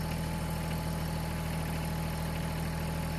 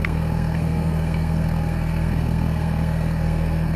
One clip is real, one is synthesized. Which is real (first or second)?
first